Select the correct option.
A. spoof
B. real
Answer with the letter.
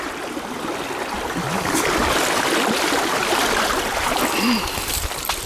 B